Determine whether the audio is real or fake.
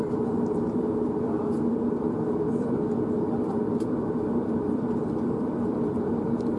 fake